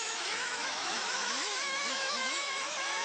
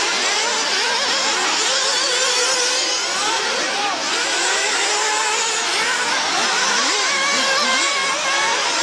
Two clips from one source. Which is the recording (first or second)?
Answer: second